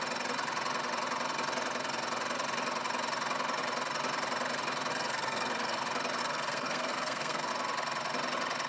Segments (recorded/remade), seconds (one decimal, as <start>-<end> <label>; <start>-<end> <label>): 0.0-4.9 recorded; 4.9-5.8 remade; 5.8-6.2 recorded; 6.2-7.5 remade; 7.5-8.7 recorded